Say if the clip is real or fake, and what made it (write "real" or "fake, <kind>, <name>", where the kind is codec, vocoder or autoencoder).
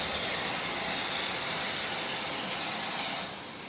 real